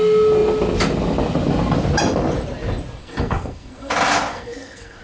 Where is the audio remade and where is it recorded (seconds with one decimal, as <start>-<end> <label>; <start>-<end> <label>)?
0.0-3.0 recorded; 3.0-3.9 remade; 3.9-4.3 recorded; 4.3-5.0 remade